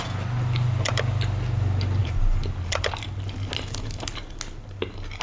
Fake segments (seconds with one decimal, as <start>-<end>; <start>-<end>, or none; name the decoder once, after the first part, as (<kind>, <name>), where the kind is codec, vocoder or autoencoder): none